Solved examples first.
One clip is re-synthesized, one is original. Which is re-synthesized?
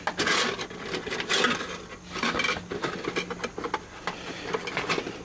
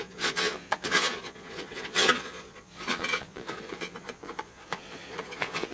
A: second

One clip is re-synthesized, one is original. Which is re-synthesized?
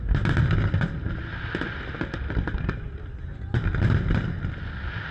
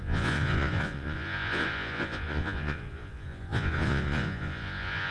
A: second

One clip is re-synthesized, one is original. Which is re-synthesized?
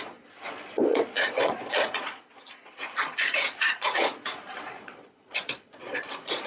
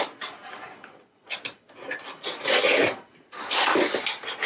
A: first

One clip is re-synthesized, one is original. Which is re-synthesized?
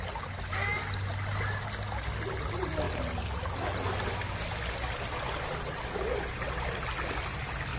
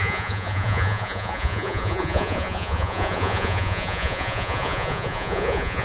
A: second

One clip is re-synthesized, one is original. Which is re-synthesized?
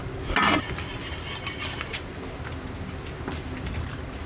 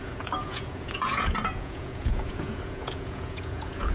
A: second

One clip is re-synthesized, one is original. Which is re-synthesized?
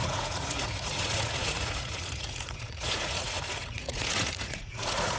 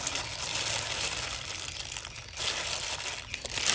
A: first